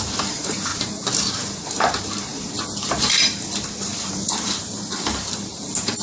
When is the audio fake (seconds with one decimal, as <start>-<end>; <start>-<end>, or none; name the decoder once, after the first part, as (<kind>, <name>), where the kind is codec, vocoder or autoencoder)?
0.0-0.7 (vocoder, BigVGAN v2); 1.3-6.0